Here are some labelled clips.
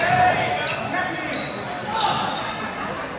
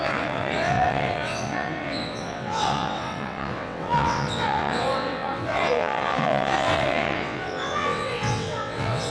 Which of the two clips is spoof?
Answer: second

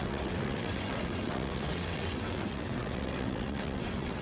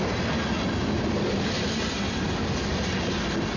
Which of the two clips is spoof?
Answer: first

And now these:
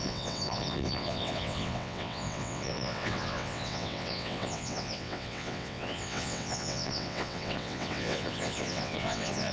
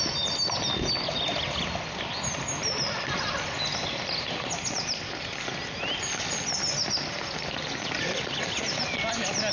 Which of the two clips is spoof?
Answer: first